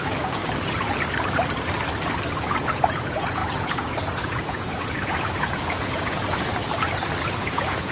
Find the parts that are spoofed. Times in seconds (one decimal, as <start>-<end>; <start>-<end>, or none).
0.0-0.4; 2.4-6.6; 7.4-7.9